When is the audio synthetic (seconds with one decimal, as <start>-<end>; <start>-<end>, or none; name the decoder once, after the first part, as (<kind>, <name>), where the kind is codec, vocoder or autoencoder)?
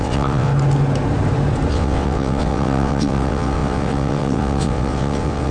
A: 0.0-0.5 (vocoder, WaveNeXt); 1.7-5.5